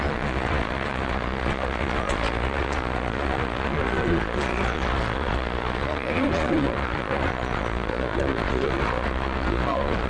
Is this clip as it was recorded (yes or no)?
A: no